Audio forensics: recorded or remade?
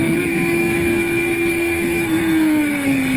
remade